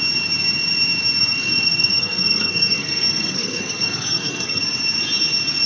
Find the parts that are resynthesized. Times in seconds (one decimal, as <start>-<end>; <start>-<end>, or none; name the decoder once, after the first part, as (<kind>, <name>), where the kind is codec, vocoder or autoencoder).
1.2-4.6 (codec, SNAC)